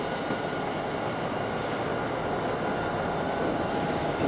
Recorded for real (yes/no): yes